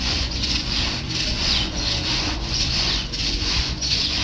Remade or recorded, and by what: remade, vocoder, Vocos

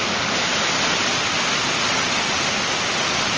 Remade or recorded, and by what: recorded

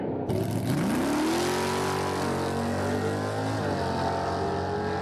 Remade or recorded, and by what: recorded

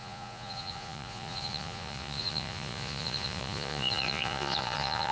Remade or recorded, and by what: remade, vocoder, Vocos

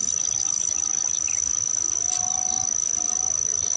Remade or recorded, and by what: recorded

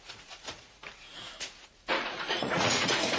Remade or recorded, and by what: remade, vocoder, Vocos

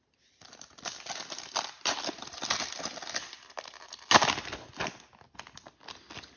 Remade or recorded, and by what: recorded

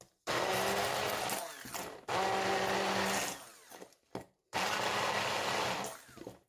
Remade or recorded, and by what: recorded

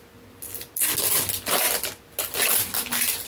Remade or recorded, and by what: recorded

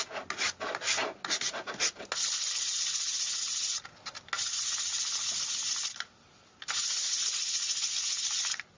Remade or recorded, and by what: recorded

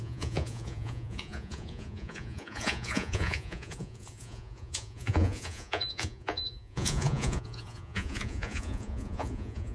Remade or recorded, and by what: remade, vocoder, Vocos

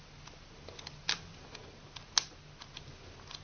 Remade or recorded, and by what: recorded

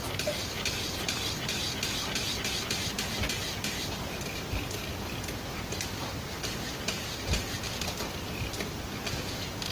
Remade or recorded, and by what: recorded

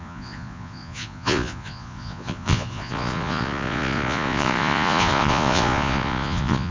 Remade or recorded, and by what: remade, vocoder, Vocos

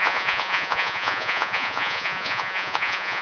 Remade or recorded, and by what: remade, vocoder, Vocos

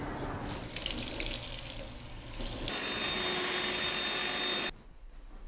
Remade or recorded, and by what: recorded